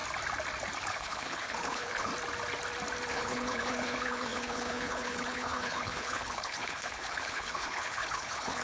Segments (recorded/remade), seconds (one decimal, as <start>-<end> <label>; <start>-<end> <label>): 0.0-0.9 recorded; 0.9-2.1 remade; 2.1-3.1 recorded; 3.1-8.6 remade